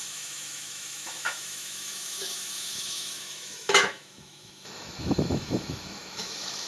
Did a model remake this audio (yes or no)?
yes